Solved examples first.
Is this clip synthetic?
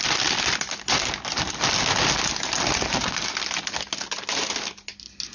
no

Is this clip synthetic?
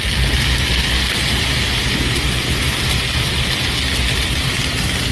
no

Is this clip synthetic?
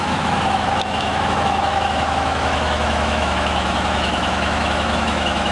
yes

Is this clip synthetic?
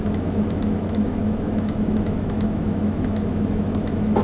yes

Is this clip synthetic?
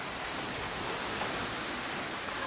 no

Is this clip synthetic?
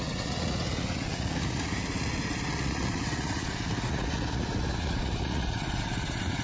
yes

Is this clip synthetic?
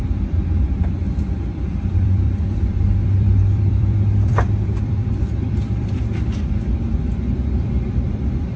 yes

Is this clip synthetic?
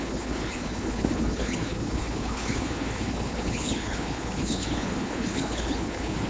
yes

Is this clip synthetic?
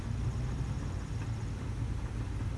no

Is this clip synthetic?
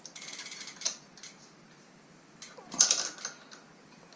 no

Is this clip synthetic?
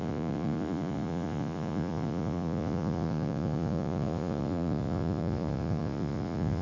yes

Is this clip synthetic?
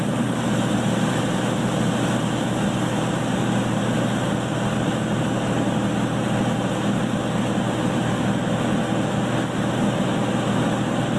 no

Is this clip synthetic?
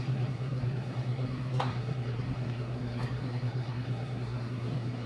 yes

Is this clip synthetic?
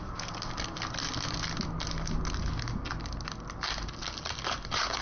no